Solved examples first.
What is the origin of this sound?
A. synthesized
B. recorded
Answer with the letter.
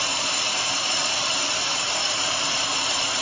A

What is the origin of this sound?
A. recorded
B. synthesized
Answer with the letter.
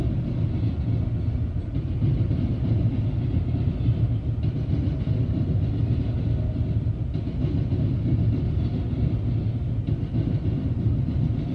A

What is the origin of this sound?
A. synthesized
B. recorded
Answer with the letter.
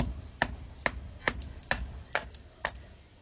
B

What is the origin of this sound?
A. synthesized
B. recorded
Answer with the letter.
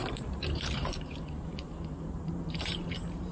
A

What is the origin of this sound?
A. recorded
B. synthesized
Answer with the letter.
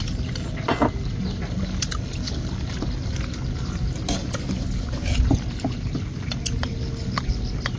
A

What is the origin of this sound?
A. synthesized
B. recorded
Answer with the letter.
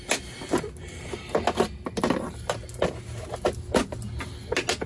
B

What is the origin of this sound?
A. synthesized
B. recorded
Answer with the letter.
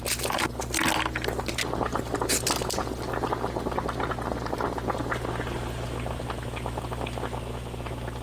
B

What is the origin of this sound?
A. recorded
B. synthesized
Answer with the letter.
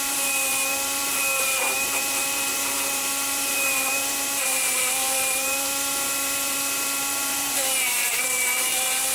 B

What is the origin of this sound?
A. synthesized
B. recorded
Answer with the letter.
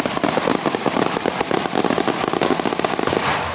B